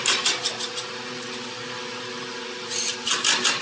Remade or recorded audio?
recorded